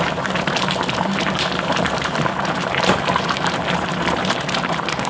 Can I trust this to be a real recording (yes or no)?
no